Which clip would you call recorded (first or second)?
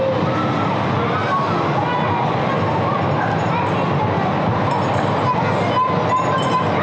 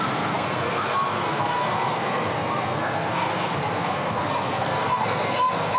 first